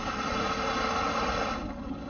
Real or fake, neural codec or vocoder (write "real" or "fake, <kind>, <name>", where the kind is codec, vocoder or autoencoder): real